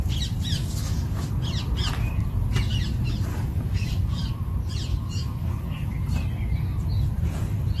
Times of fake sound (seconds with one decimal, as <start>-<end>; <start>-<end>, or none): 0.6-1.3; 3.3-4.3; 4.9-5.9